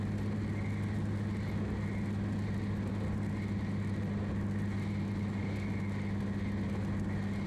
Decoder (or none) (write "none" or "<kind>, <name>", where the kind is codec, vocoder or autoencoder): none